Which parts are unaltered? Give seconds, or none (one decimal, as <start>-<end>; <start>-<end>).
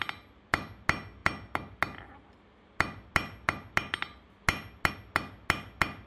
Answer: 0.0-6.1